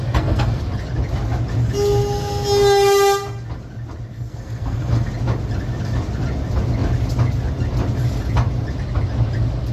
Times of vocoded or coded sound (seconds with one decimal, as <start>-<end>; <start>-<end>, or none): 0.0-0.6; 4.1-5.1